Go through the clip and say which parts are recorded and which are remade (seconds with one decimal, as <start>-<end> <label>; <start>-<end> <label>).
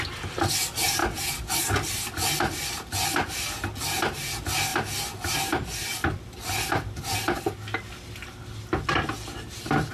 0.0-9.9 recorded